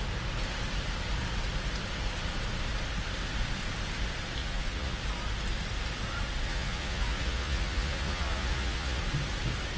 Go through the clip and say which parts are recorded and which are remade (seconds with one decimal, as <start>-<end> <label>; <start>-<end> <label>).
0.0-4.4 recorded; 4.4-5.0 remade; 5.0-6.5 recorded; 6.5-9.0 remade; 9.0-9.8 recorded

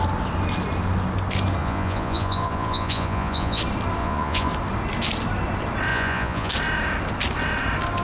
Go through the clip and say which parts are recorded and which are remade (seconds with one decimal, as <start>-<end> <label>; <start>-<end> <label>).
0.0-1.6 recorded; 1.6-3.6 remade; 3.6-4.0 recorded; 4.0-4.5 remade; 4.5-5.9 recorded; 5.9-6.5 remade; 6.5-8.0 recorded

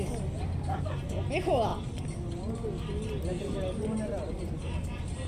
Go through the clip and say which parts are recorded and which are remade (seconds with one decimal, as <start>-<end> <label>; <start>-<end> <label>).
0.0-5.3 recorded

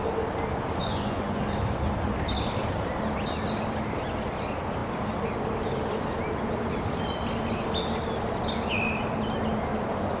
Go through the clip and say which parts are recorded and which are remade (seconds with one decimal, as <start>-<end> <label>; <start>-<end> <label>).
0.0-0.8 recorded; 0.8-1.4 remade; 1.4-10.2 recorded

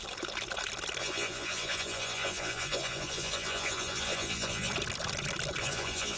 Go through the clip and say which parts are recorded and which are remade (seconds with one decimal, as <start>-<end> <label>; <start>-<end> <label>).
0.0-1.0 recorded; 1.0-4.7 remade; 4.7-5.6 recorded; 5.6-6.2 remade

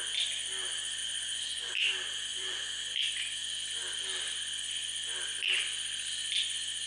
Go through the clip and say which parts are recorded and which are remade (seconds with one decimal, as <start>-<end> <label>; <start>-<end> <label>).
0.0-1.0 recorded; 1.0-1.7 remade; 1.7-2.3 recorded; 2.3-2.8 remade; 2.8-6.9 recorded